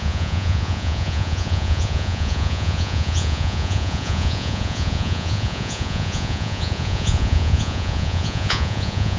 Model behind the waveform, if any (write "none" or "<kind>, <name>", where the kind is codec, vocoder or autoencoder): vocoder, Vocos